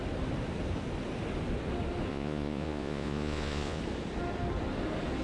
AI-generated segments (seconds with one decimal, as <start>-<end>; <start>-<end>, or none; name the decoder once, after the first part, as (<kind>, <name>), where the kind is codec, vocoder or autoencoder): 2.1-3.8 (vocoder, Vocos)